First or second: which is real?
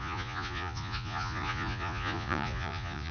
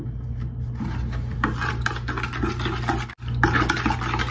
second